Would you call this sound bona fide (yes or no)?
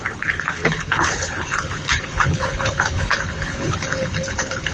no